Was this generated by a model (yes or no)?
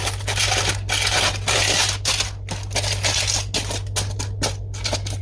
no